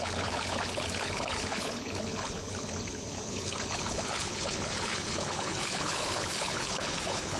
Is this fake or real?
fake